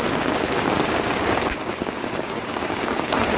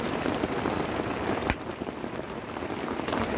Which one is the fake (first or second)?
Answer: first